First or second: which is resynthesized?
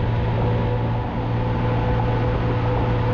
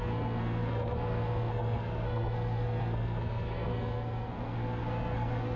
second